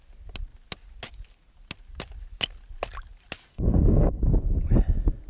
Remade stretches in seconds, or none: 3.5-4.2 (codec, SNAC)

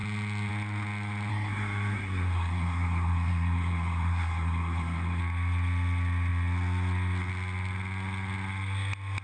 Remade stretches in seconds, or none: 1.3-5.2 (codec, SNAC)